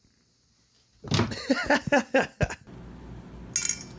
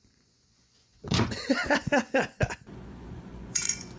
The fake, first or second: second